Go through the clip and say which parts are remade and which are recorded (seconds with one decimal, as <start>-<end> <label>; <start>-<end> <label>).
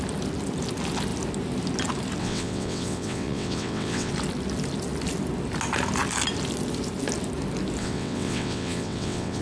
0.0-2.2 recorded; 2.2-4.1 remade; 4.1-7.8 recorded; 7.8-9.4 remade